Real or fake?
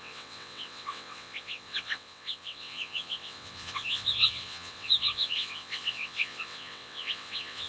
fake